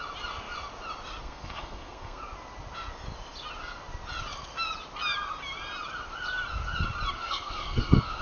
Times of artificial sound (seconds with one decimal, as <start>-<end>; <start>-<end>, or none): 1.2-2.2; 7.1-8.2